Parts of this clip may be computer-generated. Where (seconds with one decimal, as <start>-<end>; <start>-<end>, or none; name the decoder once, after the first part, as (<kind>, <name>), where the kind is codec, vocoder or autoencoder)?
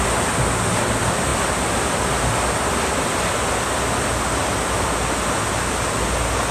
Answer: none